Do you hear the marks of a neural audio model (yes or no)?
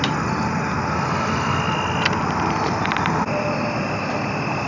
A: no